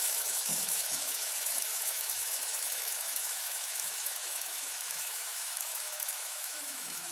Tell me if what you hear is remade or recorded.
remade